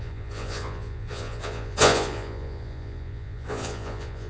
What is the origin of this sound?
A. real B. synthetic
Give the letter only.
B